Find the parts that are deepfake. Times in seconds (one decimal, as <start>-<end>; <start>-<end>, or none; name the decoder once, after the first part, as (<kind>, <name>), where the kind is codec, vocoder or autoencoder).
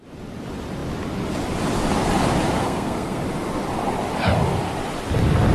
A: 2.6-3.2 (codec, SNAC)